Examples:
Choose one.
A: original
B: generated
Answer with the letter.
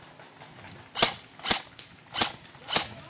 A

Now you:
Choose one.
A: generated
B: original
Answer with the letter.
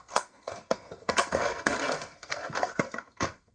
A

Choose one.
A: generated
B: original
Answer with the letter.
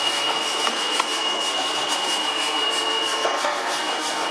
A